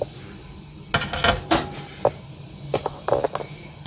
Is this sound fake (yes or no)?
no